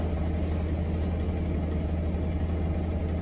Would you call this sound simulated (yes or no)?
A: no